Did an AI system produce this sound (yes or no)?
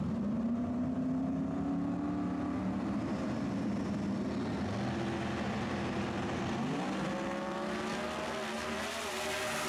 no